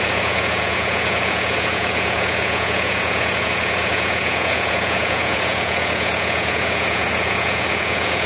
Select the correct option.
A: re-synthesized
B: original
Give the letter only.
A